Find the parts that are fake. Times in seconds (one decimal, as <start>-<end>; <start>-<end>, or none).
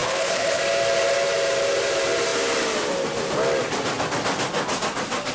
0.0-0.6